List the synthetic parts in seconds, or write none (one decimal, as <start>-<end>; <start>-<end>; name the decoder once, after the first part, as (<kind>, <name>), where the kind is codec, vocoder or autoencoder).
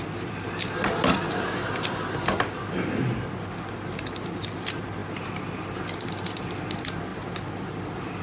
none